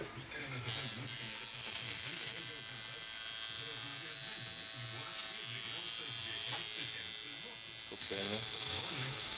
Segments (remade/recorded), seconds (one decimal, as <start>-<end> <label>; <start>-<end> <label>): 0.0-1.6 recorded; 1.6-2.4 remade; 2.4-8.0 recorded; 8.0-9.4 remade